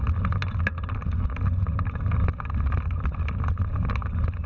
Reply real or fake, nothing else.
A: real